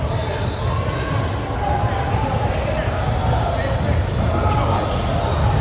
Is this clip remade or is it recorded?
recorded